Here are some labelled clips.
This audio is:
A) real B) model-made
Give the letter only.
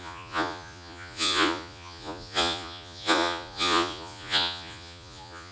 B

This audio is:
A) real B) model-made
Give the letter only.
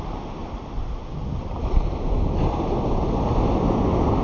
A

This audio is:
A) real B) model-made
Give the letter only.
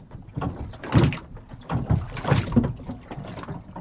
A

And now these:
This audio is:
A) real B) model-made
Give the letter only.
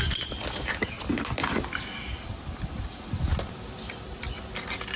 A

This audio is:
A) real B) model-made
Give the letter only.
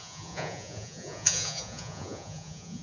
B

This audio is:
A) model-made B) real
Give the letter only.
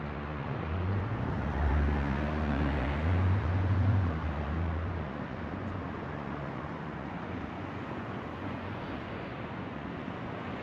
A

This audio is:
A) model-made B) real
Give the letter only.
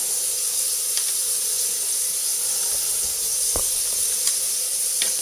B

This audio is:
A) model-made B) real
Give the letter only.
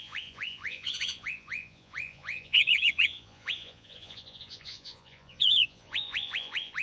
A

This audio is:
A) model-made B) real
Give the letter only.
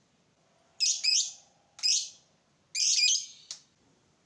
B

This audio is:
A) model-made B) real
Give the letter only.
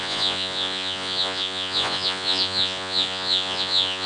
A